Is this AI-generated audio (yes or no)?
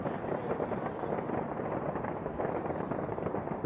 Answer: no